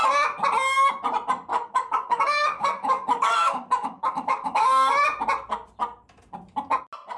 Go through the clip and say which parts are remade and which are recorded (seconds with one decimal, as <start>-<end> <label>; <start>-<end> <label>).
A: 0.0-1.5 recorded; 1.5-4.9 remade; 4.9-7.2 recorded